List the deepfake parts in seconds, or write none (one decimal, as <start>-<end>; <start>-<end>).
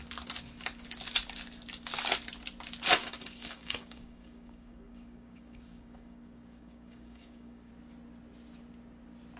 3.0-7.7